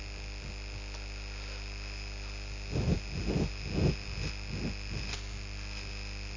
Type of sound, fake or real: real